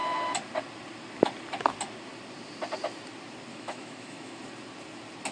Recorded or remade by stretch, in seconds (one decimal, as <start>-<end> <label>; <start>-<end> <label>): 0.0-3.5 recorded; 3.5-4.4 remade; 4.4-5.3 recorded